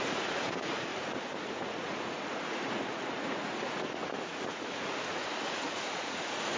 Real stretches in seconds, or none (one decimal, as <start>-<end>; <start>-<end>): none